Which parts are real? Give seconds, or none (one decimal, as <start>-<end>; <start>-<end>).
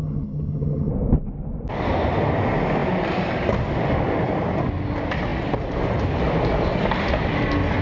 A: 0.9-7.8